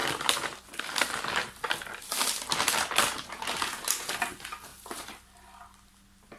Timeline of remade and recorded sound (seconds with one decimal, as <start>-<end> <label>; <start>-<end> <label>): 0.0-0.8 remade; 0.8-4.7 recorded; 4.7-5.9 remade; 5.9-6.4 recorded